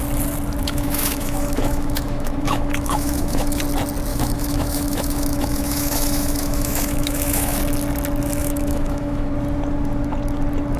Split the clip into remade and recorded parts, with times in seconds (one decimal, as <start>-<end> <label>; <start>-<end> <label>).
0.0-0.6 recorded; 0.6-3.6 remade; 3.6-4.1 recorded; 4.1-7.6 remade; 7.6-8.4 recorded; 8.4-9.3 remade; 9.3-10.8 recorded